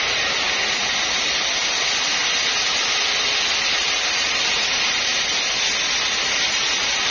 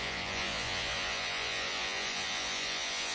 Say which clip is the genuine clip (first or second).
first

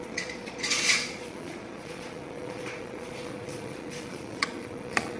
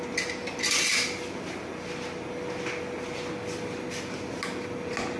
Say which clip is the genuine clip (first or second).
second